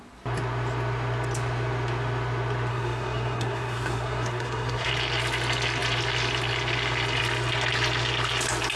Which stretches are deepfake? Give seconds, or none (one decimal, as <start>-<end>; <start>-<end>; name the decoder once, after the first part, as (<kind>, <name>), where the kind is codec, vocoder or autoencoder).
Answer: 2.7-4.9 (codec, SNAC)